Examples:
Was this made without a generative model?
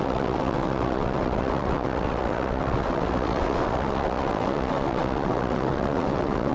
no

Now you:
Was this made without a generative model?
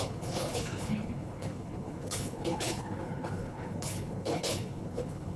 no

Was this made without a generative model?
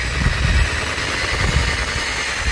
yes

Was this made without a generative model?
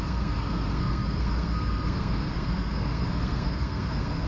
no